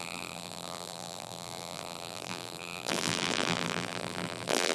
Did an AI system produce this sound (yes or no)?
yes